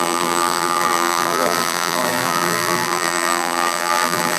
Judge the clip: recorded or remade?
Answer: remade